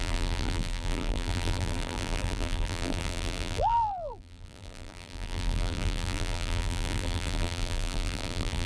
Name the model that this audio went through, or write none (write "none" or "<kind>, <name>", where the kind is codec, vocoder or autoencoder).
vocoder, BigVGAN v2